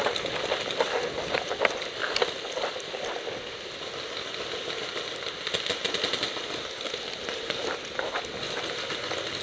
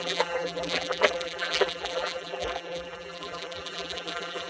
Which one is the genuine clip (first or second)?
first